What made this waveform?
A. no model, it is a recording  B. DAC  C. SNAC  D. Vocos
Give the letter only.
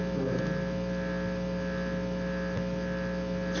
A